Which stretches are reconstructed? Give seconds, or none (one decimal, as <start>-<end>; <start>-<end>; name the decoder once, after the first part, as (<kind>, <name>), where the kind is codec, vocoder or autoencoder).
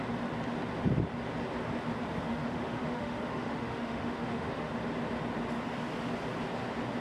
2.3-4.7 (autoencoder, DAC-VAE)